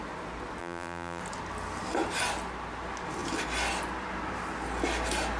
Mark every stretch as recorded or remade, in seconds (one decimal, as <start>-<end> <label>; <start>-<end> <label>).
0.0-0.6 recorded; 0.6-1.2 remade; 1.2-5.4 recorded